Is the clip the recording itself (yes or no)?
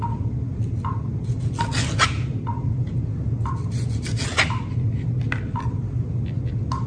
yes